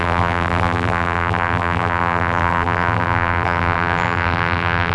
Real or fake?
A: fake